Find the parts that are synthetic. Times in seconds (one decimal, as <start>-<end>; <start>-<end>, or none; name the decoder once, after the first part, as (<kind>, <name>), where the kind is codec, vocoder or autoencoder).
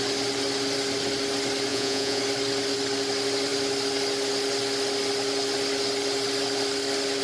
1.7-2.2 (vocoder, Vocos)